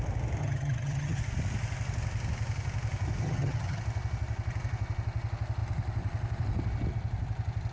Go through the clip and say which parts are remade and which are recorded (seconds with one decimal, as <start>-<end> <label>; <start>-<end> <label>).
0.0-0.4 recorded; 0.4-1.2 remade; 1.2-3.2 recorded; 3.2-3.8 remade; 3.8-7.7 recorded